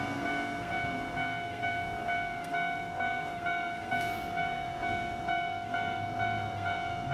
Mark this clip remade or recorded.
remade